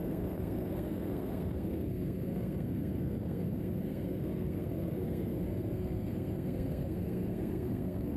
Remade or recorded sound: remade